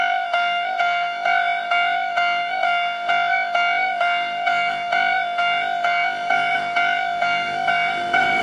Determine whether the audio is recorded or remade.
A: remade